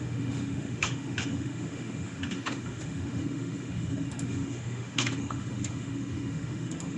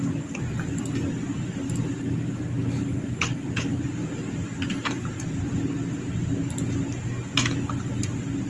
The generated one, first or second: first